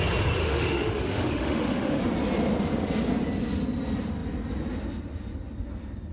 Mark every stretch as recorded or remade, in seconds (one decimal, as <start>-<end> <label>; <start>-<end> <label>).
0.0-0.4 recorded; 0.4-2.0 remade; 2.0-6.1 recorded